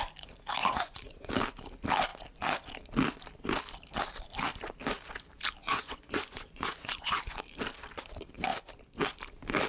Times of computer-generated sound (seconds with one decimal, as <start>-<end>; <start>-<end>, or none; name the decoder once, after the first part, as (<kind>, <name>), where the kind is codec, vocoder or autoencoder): 0.6-1.3 (vocoder, Vocos); 5.6-7.4